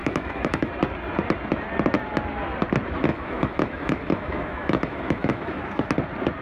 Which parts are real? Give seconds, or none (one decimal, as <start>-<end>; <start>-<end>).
0.7-3.1; 5.9-6.4